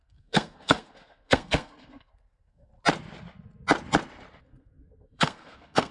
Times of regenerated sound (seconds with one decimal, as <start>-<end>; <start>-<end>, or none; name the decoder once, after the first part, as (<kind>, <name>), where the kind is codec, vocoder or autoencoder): 0.0-2.7 (codec, SNAC); 4.4-5.9